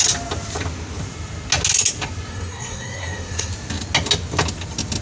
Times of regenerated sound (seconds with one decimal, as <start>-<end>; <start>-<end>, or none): 2.3-3.5